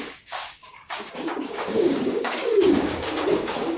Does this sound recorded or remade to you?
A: remade